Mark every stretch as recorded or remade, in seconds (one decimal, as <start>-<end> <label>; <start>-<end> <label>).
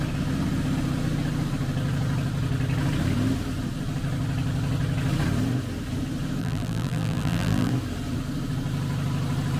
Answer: 0.0-6.4 recorded; 6.4-7.7 remade; 7.7-9.6 recorded